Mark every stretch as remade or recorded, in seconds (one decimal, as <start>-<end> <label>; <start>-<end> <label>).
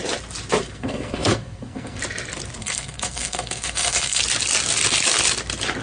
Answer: 0.0-0.6 recorded; 0.6-2.0 remade; 2.0-2.6 recorded; 2.6-4.2 remade; 4.2-5.8 recorded